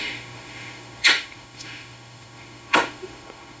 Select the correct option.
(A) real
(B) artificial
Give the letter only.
B